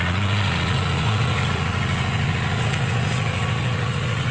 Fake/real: fake